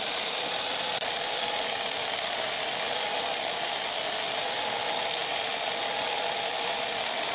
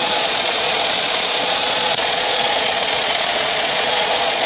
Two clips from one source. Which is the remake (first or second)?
second